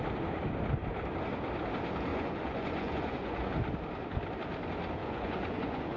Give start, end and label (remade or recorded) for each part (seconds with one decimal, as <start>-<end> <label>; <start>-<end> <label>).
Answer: 0.0-2.1 recorded; 2.1-3.5 remade; 3.5-5.0 recorded; 5.0-6.0 remade